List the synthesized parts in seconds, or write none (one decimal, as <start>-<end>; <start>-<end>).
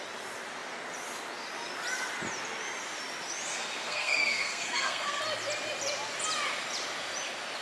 3.5-5.2